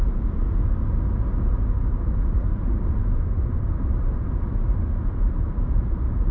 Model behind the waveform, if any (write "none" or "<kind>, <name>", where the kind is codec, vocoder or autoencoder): vocoder, BigVGAN v2